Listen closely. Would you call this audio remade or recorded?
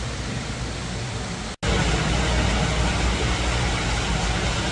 recorded